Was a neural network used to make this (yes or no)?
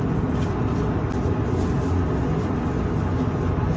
no